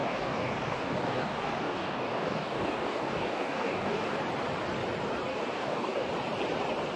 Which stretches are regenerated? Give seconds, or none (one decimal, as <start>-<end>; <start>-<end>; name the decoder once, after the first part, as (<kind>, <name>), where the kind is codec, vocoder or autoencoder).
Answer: 0.0-4.2 (codec, DAC); 5.3-6.1